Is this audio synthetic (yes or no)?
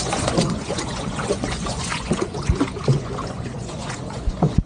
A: yes